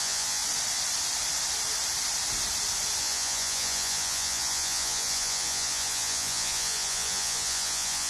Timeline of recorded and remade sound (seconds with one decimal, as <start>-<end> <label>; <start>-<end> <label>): 0.0-0.4 remade; 0.4-3.0 recorded; 3.0-8.1 remade